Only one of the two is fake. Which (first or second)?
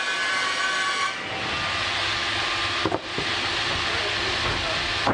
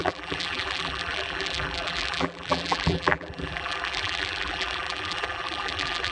second